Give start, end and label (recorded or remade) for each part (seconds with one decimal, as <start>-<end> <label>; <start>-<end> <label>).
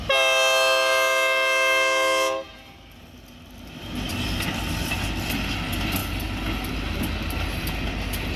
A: 0.0-8.4 recorded